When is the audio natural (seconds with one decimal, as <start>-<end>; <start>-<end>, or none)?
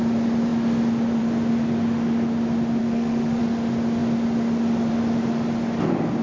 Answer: 0.0-2.8; 3.4-6.2